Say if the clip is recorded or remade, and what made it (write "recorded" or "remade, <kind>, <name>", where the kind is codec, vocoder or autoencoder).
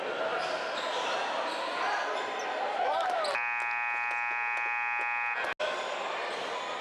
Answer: recorded